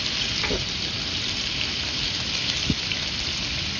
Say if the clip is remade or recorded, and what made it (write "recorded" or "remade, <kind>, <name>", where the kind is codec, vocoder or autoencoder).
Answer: recorded